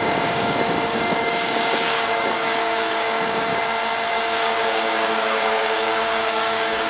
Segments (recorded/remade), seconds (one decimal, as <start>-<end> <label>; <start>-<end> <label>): 0.0-3.5 remade; 3.5-4.1 recorded; 4.1-6.9 remade